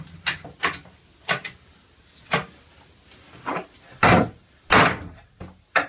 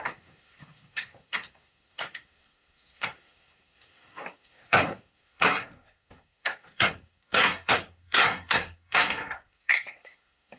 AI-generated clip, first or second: second